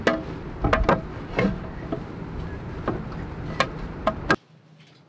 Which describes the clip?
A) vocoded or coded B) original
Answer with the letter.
B